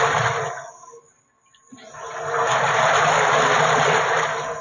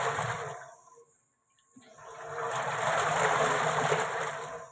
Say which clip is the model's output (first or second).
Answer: second